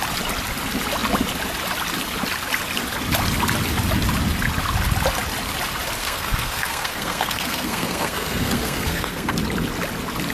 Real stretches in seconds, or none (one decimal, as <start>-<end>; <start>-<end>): 0.0-6.0; 9.4-10.3